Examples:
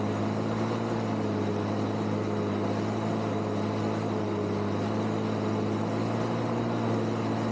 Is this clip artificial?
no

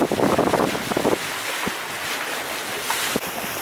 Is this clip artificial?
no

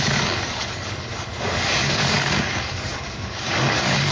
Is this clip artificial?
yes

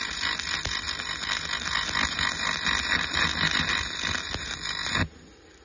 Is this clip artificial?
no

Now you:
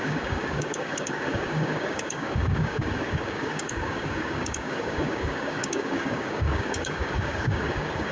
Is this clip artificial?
yes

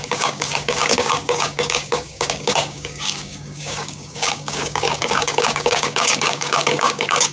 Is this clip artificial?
yes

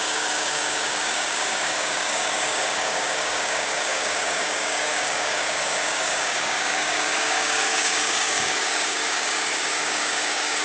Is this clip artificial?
yes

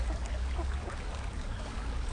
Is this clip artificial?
yes